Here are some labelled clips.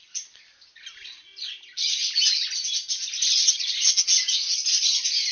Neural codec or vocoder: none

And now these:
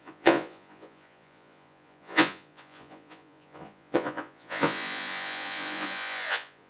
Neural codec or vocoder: vocoder, Vocos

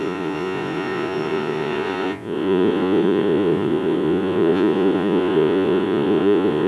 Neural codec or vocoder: vocoder, Vocos